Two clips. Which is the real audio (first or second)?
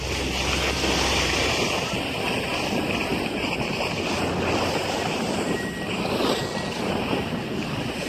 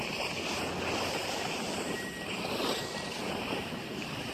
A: first